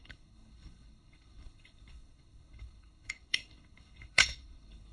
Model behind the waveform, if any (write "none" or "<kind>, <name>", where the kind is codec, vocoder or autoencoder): codec, HILCodec